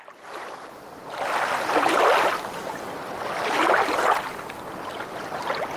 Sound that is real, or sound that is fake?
real